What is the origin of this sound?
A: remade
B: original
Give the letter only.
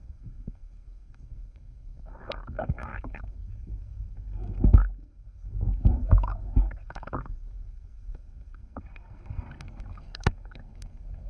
A